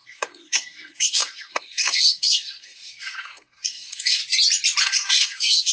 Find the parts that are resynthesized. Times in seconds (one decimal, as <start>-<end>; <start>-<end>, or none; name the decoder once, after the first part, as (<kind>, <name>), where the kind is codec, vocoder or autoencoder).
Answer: 0.0-4.2 (codec, SNAC); 4.8-5.7